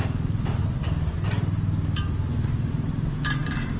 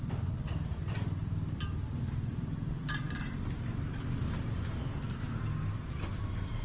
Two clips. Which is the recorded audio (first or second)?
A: first